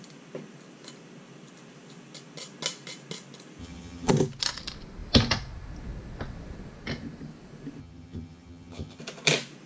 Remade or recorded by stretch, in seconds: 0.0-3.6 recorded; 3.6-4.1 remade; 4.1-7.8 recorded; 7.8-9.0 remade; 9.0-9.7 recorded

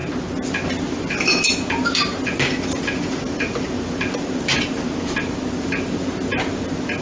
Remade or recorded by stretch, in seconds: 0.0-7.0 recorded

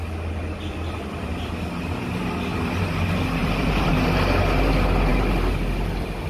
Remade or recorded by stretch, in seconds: 0.0-3.4 recorded; 3.4-3.9 remade; 3.9-6.3 recorded

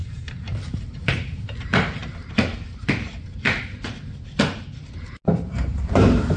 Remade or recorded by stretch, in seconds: 0.0-2.0 remade; 2.0-5.5 recorded; 5.5-6.4 remade

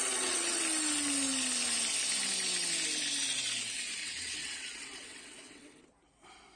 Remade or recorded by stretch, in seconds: 0.0-0.6 remade; 0.6-4.0 recorded; 4.0-5.8 remade; 5.8-6.6 recorded